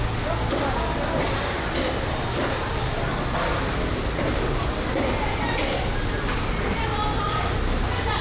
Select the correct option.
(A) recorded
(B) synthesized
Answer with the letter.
A